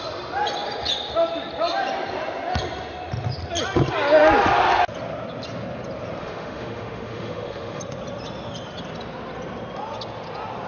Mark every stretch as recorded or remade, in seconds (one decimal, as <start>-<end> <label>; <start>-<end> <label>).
0.0-6.2 recorded; 6.2-7.8 remade; 7.8-10.7 recorded